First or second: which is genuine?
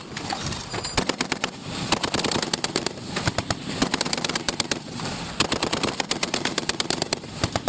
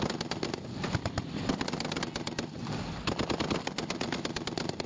second